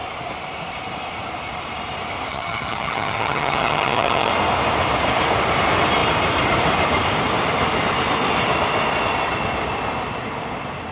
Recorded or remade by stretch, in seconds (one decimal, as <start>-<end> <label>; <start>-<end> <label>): 0.0-2.3 recorded; 2.3-4.3 remade; 4.3-10.9 recorded